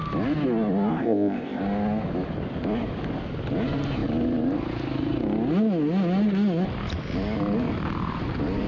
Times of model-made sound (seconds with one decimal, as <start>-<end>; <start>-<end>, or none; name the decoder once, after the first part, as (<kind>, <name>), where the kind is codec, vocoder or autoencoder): 0.9-1.6 (codec, ZipCodec)

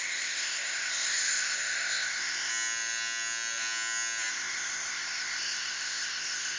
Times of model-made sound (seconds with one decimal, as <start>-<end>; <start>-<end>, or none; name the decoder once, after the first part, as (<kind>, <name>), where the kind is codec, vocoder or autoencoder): 0.0-2.5 (codec, ZipCodec); 4.3-6.6

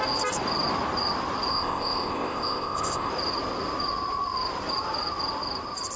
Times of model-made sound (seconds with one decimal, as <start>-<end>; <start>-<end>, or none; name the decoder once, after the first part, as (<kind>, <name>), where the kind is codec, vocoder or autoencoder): 1.5-3.1 (codec, ZipCodec)

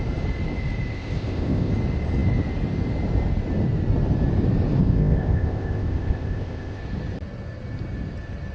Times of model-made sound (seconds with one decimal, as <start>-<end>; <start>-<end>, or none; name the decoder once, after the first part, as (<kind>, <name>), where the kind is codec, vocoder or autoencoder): 0.9-1.7 (codec, ZipCodec); 4.8-6.8

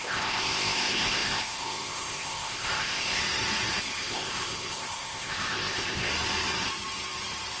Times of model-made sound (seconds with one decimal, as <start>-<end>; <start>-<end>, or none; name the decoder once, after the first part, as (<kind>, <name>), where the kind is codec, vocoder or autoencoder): 0.0-3.2 (codec, ZipCodec); 3.8-6.1